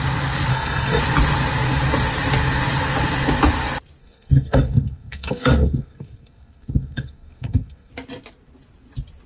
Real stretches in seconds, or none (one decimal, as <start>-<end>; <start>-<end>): 0.0-0.5; 1.0-4.0; 7.9-9.3